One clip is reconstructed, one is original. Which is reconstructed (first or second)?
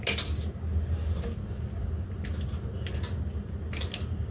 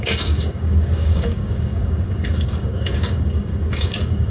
second